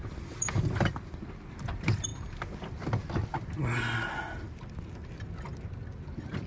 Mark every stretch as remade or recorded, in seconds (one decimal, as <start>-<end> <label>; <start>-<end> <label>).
0.0-6.5 recorded